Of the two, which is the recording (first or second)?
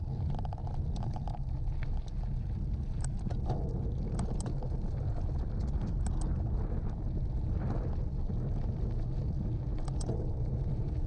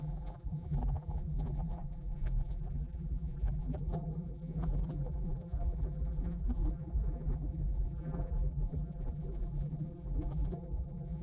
first